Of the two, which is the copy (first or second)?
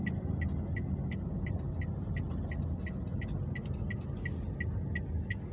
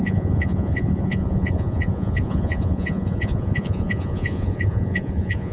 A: second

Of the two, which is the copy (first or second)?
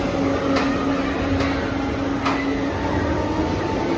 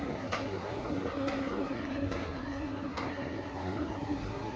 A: second